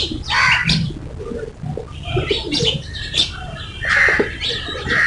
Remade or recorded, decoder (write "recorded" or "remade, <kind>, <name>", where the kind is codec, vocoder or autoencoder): recorded